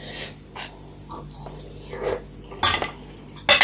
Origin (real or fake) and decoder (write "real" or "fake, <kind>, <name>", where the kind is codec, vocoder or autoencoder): real